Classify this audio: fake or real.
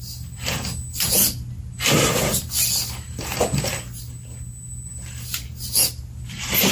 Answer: real